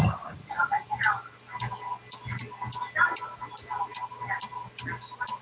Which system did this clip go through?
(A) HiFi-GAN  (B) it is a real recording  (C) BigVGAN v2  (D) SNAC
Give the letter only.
B